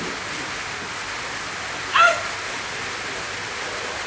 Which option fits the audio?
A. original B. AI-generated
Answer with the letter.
A